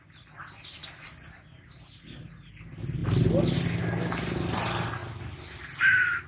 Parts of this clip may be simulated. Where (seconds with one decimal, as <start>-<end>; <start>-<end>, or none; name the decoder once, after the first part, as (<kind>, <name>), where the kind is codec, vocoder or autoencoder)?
none